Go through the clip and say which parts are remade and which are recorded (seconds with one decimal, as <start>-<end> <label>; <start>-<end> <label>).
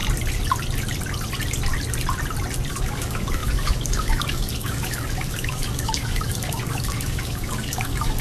0.0-2.7 recorded; 2.7-8.2 remade